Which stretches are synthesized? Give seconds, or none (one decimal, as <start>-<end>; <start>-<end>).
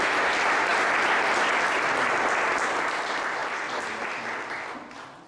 none